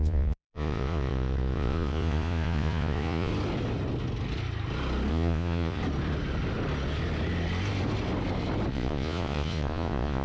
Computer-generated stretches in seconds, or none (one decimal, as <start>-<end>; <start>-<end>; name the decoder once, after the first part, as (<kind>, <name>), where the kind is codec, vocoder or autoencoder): 0.0-3.3 (vocoder, Vocos); 5.1-5.8; 8.7-10.2